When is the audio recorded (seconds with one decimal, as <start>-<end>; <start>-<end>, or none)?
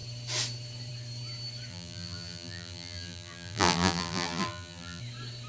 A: 0.0-1.7; 5.0-5.5